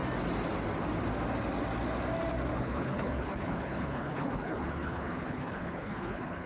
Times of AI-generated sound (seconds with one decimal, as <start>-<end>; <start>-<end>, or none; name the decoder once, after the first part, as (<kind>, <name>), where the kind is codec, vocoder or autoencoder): 2.5-6.5 (codec, HILCodec)